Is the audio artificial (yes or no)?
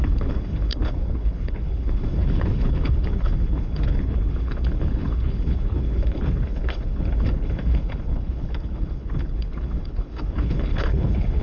yes